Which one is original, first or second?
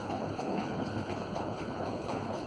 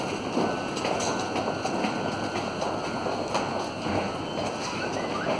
second